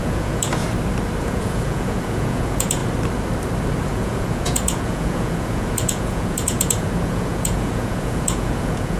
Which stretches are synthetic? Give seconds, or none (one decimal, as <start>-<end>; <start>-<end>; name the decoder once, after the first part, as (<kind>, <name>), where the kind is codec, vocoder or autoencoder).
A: 0.0-0.5 (vocoder, Vocos); 1.2-2.8; 3.8-9.0